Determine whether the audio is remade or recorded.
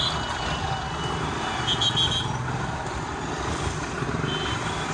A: recorded